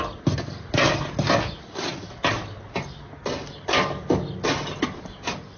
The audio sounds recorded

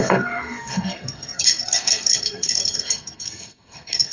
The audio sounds remade